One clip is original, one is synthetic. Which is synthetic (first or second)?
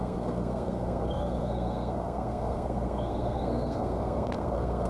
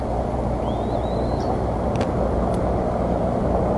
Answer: first